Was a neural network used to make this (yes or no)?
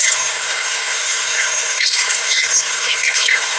yes